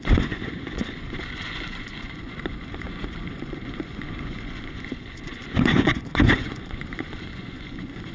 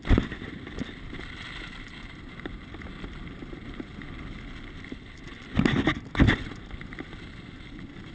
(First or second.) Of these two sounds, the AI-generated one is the first